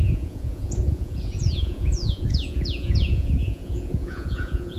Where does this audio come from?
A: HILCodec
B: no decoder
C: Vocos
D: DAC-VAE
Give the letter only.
C